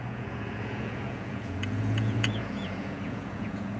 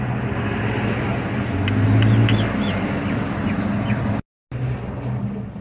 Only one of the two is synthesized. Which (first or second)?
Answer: first